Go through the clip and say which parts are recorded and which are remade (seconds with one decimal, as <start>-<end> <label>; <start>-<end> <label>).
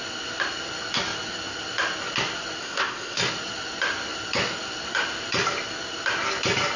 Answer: 0.0-2.6 recorded; 2.6-3.2 remade; 3.2-6.8 recorded